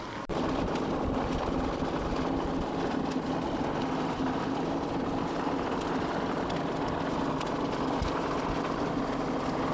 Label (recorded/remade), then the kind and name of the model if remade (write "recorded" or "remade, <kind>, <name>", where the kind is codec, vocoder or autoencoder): recorded